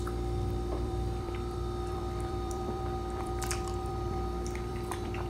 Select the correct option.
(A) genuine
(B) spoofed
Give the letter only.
B